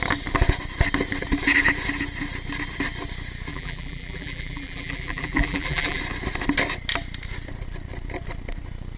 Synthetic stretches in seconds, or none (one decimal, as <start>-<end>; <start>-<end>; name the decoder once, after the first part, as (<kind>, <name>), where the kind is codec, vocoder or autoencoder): 3.5-6.0 (vocoder, BigVGAN v2)